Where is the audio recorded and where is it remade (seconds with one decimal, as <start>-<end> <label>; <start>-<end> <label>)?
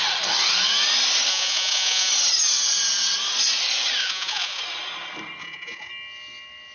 0.0-1.3 recorded; 1.3-2.1 remade; 2.1-4.0 recorded; 4.0-4.6 remade; 4.6-5.4 recorded; 5.4-5.9 remade; 5.9-6.7 recorded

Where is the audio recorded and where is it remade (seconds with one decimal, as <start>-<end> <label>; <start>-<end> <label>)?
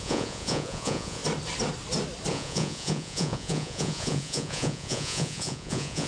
0.0-1.2 remade; 1.2-2.3 recorded; 2.3-6.1 remade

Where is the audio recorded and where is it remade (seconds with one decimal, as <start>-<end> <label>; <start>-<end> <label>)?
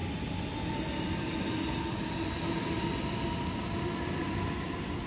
0.0-5.1 recorded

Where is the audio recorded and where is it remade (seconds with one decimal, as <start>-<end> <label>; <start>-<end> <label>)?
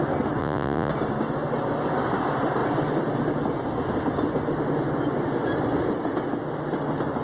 0.0-0.4 recorded; 0.4-0.9 remade; 0.9-7.2 recorded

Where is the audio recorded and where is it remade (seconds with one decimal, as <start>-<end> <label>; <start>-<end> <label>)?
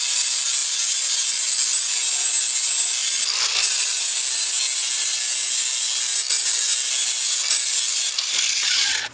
0.0-9.1 recorded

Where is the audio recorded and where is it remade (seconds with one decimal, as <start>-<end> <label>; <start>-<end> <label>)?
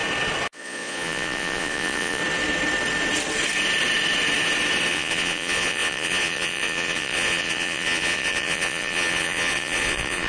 0.0-0.5 recorded; 0.5-2.2 remade; 2.2-4.9 recorded; 4.9-10.3 remade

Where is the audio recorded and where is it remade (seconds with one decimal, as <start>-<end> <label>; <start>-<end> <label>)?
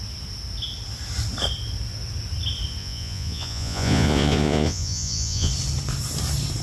0.0-2.8 recorded; 2.8-5.5 remade; 5.5-6.6 recorded